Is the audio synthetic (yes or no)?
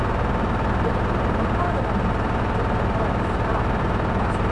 no